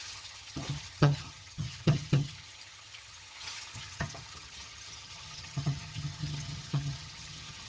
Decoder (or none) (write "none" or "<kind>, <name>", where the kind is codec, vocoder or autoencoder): vocoder, HiFi-GAN